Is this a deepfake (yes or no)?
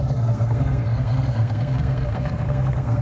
yes